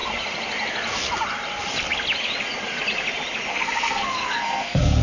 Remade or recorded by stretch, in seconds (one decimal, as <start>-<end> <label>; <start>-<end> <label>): 0.0-3.5 recorded; 3.5-5.0 remade